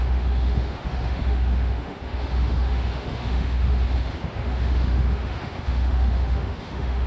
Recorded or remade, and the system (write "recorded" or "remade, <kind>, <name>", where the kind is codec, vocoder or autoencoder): remade, autoencoder, DAC-VAE